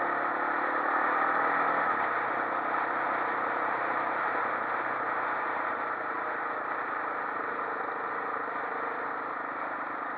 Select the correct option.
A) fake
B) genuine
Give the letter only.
B